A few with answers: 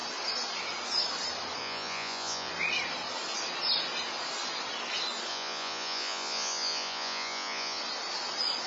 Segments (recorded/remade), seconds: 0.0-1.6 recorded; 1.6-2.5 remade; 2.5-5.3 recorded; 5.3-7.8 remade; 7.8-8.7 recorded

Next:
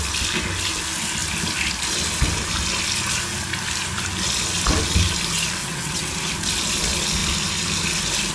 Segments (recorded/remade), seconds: 0.0-5.6 recorded; 5.6-6.1 remade; 6.1-8.3 recorded

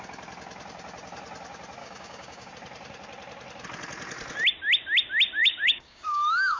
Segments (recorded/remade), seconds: 0.0-1.8 recorded; 1.8-2.5 remade; 2.5-5.4 recorded; 5.4-6.6 remade